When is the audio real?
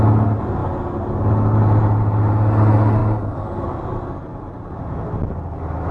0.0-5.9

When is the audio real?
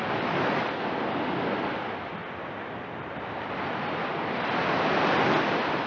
0.0-5.9